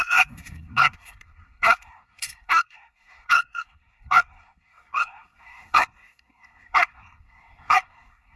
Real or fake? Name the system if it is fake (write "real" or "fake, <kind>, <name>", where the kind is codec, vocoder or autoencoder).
fake, codec, SNAC